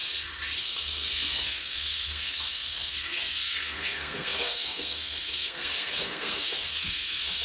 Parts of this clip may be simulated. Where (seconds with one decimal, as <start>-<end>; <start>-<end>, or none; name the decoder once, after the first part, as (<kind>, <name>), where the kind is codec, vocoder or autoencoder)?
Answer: 0.6-7.4 (codec, SNAC)